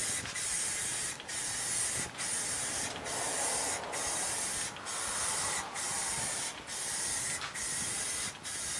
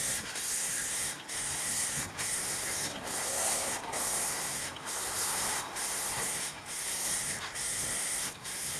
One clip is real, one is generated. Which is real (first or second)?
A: first